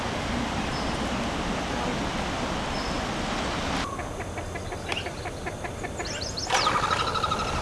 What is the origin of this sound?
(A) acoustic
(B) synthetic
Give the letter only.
A